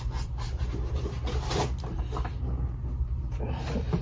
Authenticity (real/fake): fake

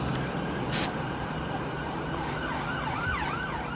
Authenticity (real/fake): fake